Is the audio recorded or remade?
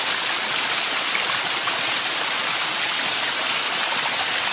recorded